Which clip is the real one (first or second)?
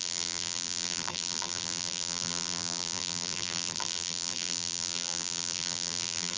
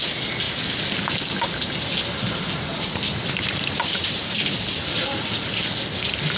second